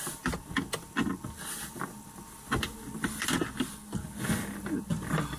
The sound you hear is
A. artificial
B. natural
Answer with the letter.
B